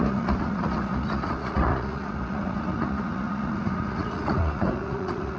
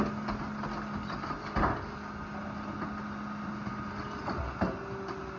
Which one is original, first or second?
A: second